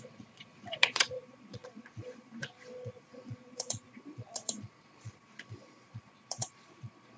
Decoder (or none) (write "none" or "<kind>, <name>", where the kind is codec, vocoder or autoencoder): vocoder, Vocos